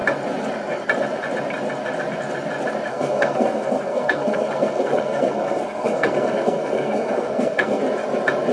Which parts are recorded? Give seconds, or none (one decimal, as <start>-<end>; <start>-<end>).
0.0-2.9; 7.8-8.5